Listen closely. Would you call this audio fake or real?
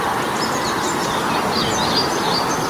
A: real